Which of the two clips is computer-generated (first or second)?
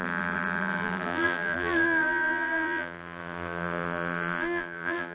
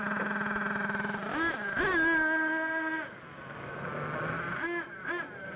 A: first